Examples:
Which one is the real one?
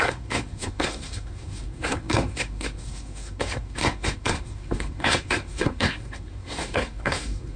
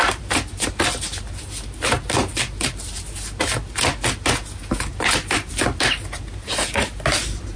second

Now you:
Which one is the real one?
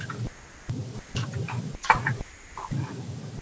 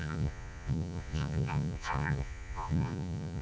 first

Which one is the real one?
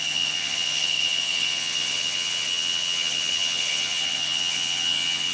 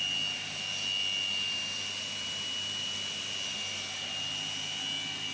second